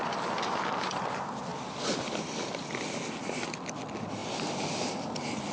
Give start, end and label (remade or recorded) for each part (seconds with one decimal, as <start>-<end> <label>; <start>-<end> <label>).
0.0-5.5 recorded